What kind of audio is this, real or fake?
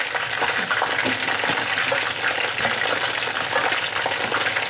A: real